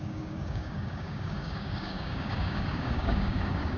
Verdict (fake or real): fake